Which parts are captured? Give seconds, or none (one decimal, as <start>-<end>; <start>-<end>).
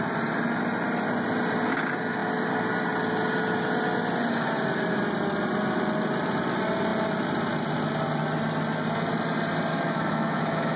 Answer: 0.0-9.7